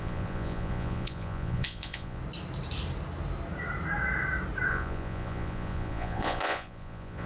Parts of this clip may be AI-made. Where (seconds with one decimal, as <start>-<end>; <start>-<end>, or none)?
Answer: 0.0-2.2; 4.7-7.3